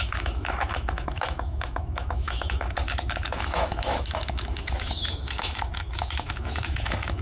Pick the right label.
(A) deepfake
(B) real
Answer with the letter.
A